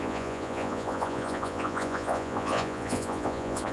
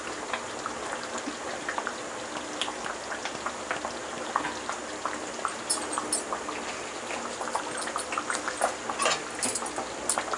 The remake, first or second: first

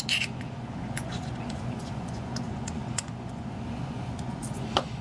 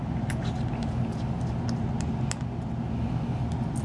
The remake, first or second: first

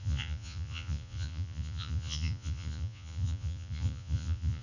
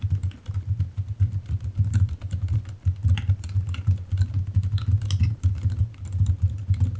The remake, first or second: first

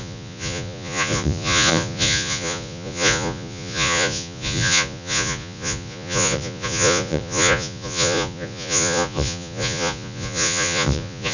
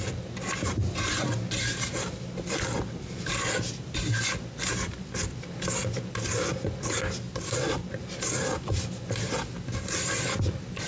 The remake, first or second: first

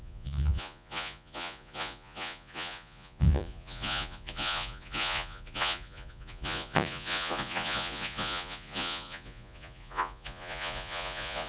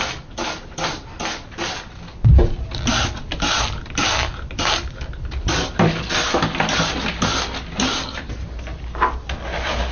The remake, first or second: first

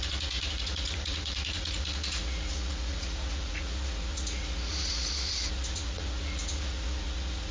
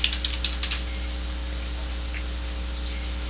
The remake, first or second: first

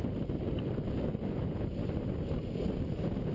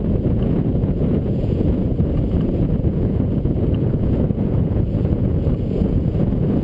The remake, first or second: second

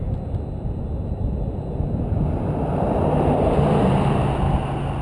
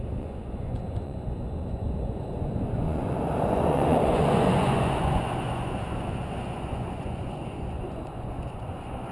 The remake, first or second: second